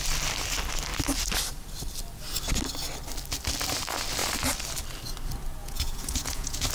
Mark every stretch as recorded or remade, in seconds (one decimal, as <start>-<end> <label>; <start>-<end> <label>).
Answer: 0.0-5.6 recorded; 5.6-6.7 remade